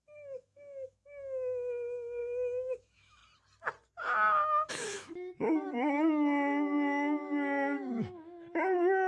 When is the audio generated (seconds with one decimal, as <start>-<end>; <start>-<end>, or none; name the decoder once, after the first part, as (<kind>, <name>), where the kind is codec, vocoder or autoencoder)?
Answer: 0.0-3.2 (autoencoder, DAC-VAE); 4.7-9.1